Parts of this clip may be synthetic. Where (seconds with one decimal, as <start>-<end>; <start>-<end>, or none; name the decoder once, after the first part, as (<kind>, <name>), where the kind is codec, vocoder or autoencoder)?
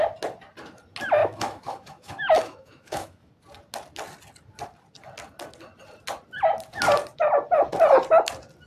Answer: 1.2-3.3 (autoencoder, DAC-VAE)